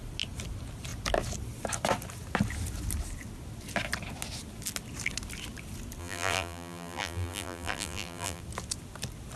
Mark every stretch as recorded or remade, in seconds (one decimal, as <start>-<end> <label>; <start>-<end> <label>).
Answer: 0.0-6.0 recorded; 6.0-8.4 remade; 8.4-9.4 recorded